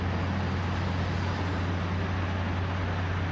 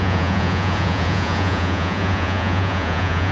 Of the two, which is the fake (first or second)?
second